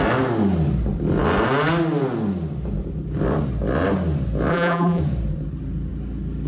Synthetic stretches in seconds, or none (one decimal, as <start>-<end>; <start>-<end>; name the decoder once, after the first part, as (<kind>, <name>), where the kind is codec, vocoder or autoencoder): 4.5-5.0 (vocoder, BigVGAN v2)